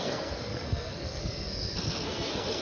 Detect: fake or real fake